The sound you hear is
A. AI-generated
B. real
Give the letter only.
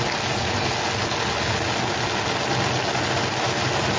B